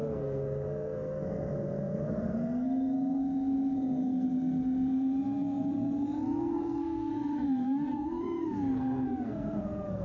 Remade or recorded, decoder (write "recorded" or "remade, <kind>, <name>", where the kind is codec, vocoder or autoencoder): remade, codec, SNAC